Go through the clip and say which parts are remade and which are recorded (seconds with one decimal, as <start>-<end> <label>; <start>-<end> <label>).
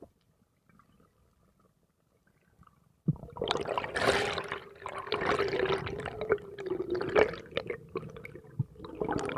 0.0-9.4 recorded